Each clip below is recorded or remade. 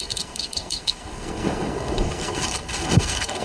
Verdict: remade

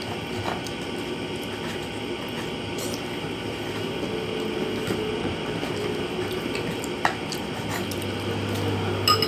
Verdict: recorded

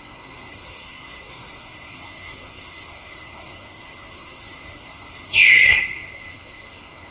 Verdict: remade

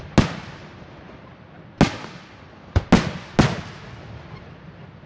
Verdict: recorded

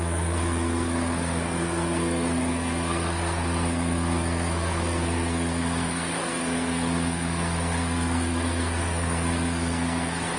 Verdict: remade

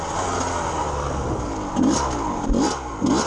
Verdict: recorded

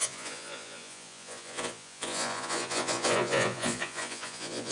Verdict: remade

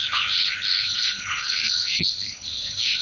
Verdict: remade